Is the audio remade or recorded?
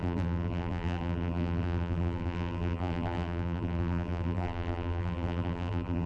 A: remade